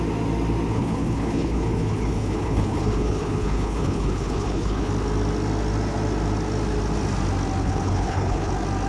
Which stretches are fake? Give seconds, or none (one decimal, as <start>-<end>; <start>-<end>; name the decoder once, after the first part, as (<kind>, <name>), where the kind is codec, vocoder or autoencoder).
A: 0.7-4.9 (codec, HILCodec); 7.6-8.5